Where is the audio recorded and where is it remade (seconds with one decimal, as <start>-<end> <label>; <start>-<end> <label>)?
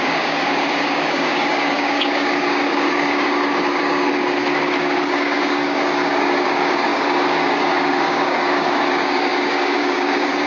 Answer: 0.0-4.1 remade; 4.1-5.0 recorded; 5.0-10.5 remade